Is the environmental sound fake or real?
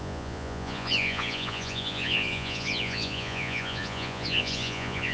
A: fake